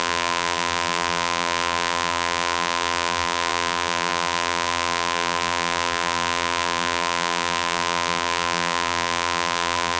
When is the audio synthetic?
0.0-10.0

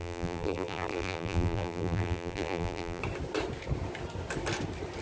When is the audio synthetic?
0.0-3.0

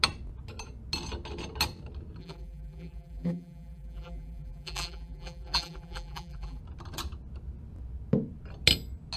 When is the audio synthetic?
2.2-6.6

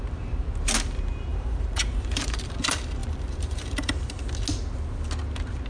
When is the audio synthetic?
1.3-2.5; 3.0-3.9